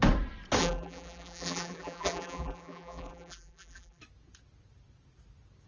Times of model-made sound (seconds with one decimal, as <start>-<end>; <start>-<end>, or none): 0.6-4.0